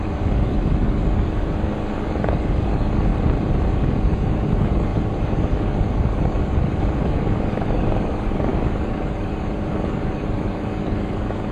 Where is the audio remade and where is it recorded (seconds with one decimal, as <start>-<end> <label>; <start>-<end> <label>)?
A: 0.0-3.1 remade; 3.1-3.7 recorded; 3.7-11.5 remade

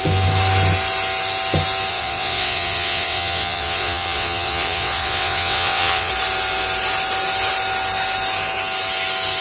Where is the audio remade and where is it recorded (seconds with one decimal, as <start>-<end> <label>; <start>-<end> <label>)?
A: 0.0-1.9 recorded; 1.9-6.1 remade; 6.1-9.4 recorded

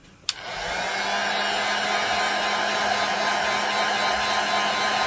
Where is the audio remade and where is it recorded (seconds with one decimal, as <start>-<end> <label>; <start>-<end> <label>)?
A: 0.0-5.1 recorded